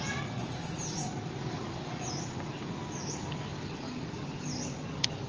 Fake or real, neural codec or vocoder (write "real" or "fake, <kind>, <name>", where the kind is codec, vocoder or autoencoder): real